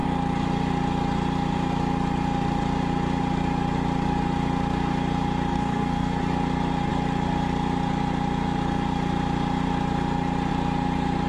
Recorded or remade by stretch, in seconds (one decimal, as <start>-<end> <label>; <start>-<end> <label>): 0.0-5.5 recorded; 5.5-6.2 remade; 6.2-11.3 recorded